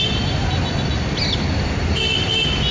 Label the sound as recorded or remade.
recorded